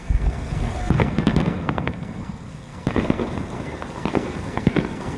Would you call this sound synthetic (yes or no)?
yes